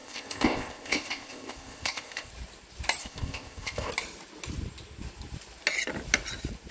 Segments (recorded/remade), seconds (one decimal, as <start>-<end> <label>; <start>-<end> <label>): 0.0-2.3 remade; 2.3-3.0 recorded; 3.0-3.9 remade; 3.9-6.7 recorded